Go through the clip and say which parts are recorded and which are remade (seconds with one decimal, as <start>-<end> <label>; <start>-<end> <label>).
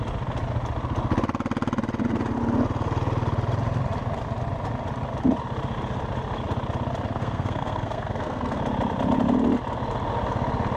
0.0-7.2 recorded; 7.2-8.6 remade; 8.6-10.8 recorded